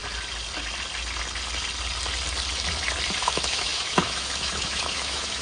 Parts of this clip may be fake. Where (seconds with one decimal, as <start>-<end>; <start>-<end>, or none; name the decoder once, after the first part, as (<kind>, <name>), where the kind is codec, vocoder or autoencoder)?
3.2-5.4 (autoencoder, DAC-VAE)